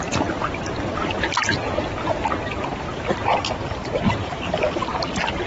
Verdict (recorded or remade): recorded